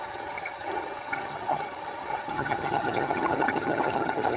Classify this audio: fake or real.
fake